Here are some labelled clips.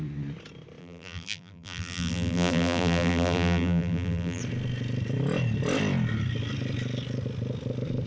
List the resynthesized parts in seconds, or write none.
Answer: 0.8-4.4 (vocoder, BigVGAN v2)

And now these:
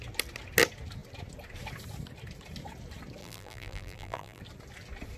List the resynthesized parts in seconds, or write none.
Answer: 3.2-4.4 (vocoder, BigVGAN v2)

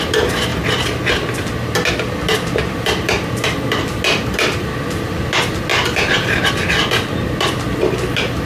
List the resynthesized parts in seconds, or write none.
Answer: 5.7-6.5 (vocoder, BigVGAN v2)

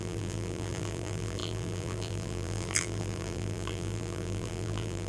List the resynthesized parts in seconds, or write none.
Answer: 0.0-5.1 (vocoder, BigVGAN v2)

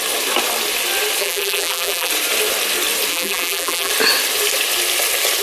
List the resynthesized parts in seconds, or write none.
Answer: 1.2-2.1 (vocoder, BigVGAN v2); 3.1-3.9

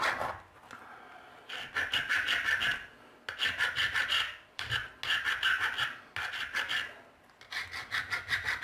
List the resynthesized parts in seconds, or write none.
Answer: 4.0-4.9 (vocoder, BigVGAN v2)

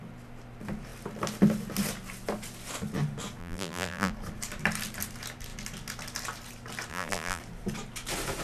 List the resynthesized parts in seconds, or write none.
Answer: 3.4-4.1 (vocoder, BigVGAN v2); 6.9-7.4

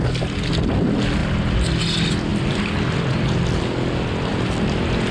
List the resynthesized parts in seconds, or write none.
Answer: 1.2-1.8 (vocoder, BigVGAN v2); 2.3-3.6; 4.3-5.1